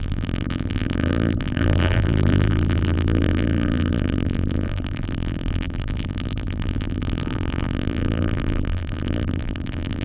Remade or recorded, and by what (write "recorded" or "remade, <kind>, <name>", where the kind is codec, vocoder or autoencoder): remade, vocoder, BigVGAN v2